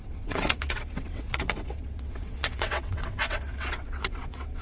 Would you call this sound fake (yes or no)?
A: yes